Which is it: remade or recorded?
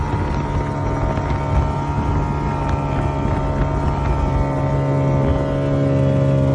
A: recorded